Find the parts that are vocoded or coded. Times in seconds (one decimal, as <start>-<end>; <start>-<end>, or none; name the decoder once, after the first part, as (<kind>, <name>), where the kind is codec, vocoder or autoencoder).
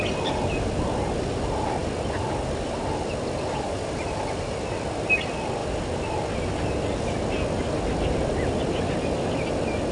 none